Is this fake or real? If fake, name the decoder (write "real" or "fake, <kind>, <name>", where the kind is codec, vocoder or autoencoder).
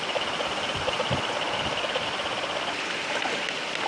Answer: real